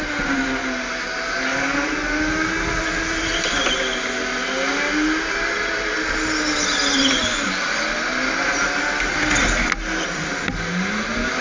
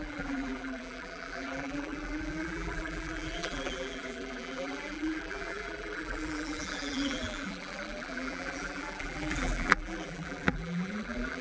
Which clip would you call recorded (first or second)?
first